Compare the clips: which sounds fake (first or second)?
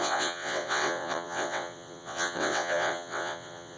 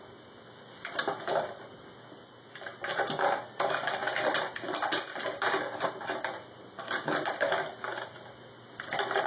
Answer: first